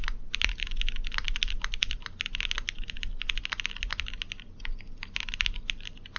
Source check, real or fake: real